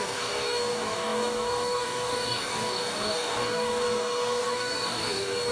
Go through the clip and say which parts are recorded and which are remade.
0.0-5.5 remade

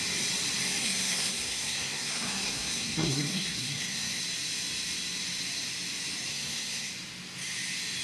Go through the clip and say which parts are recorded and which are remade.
0.0-0.8 recorded; 0.8-4.2 remade; 4.2-6.3 recorded; 6.3-6.9 remade; 6.9-8.0 recorded

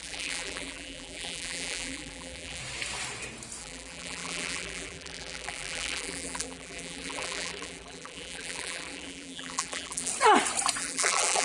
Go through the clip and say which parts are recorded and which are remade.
0.0-2.6 remade; 2.6-3.6 recorded; 3.6-10.1 remade; 10.1-10.8 recorded; 10.8-11.4 remade

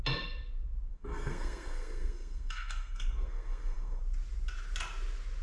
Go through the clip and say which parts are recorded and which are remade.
0.0-0.9 recorded; 0.9-4.0 remade; 4.0-5.4 recorded

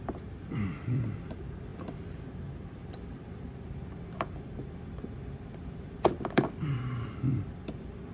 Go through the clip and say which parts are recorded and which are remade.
0.0-8.1 remade

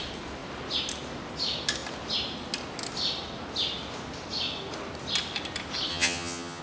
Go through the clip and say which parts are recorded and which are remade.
0.0-5.9 recorded; 5.9-6.6 remade

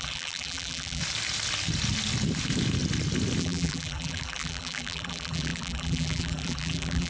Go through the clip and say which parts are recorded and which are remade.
0.0-1.0 remade; 1.0-3.4 recorded; 3.4-7.1 remade